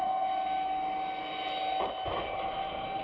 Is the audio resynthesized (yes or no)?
no